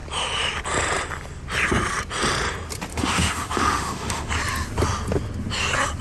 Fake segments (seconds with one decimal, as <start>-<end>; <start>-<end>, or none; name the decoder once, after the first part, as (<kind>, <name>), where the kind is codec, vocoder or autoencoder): 2.9-4.3 (autoencoder, DAC-VAE)